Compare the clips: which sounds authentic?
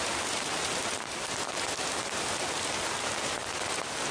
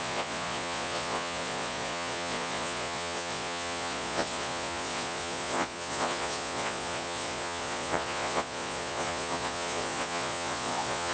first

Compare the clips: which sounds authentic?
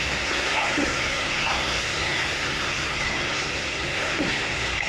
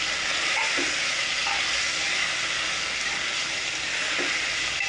second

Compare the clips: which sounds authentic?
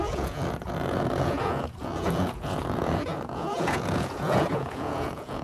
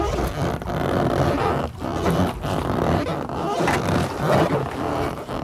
second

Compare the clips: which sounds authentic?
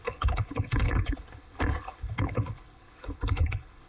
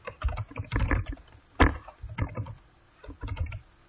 second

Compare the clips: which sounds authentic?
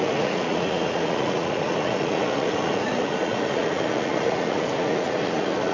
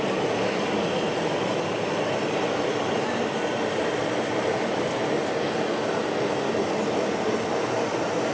second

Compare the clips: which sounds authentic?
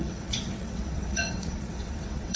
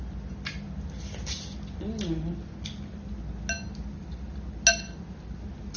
second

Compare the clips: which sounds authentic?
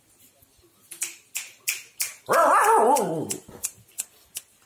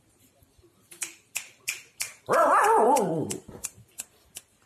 first